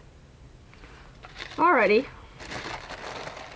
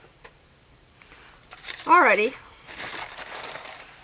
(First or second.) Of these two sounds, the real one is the first